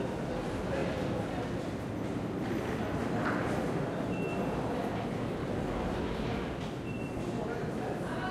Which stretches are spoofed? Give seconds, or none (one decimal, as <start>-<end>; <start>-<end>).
5.4-6.0